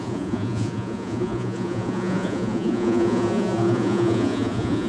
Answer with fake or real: fake